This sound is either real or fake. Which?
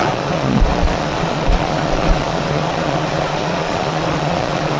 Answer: fake